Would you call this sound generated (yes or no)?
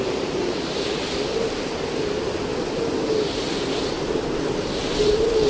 no